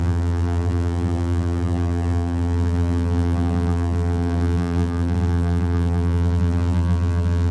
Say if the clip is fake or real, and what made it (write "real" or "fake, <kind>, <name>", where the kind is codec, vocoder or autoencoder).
fake, vocoder, BigVGAN v2